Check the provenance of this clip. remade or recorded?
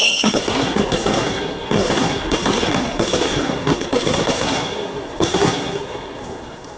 remade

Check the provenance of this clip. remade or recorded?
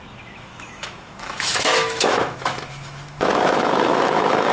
remade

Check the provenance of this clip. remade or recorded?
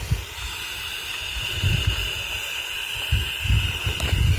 recorded